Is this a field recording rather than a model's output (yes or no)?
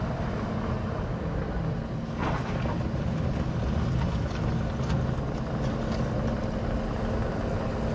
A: yes